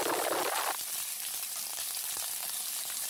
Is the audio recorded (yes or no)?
yes